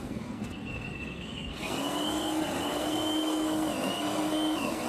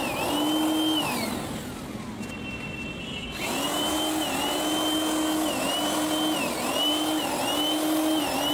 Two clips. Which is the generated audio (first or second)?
first